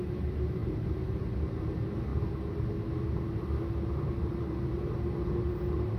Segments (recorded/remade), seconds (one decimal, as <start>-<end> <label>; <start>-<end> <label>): 0.0-6.0 recorded